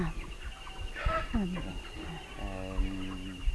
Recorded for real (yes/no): yes